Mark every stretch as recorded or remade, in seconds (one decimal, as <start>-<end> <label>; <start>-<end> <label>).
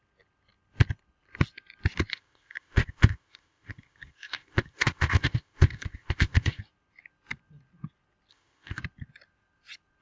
0.0-2.1 recorded; 2.1-6.6 remade; 6.6-8.3 recorded; 8.3-8.8 remade; 8.8-10.0 recorded